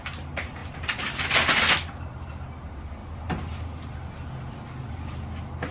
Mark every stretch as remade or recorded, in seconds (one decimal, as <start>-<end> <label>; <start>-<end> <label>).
0.0-5.7 recorded